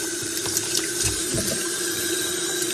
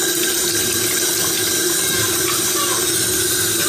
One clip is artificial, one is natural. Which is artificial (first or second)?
first